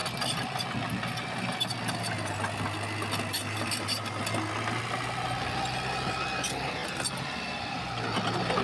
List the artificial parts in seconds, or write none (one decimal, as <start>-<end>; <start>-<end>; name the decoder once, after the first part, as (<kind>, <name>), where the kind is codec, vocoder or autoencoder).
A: 3.3-4.2 (vocoder, BigVGAN v2)